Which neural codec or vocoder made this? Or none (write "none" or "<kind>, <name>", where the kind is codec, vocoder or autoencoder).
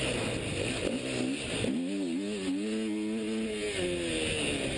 none